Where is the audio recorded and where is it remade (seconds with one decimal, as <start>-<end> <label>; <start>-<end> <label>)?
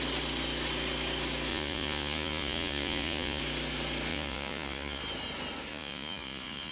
0.0-1.5 recorded; 1.5-3.4 remade; 3.4-4.1 recorded; 4.1-5.0 remade; 5.0-5.7 recorded; 5.7-6.7 remade